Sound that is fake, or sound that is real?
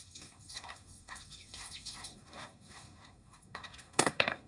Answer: fake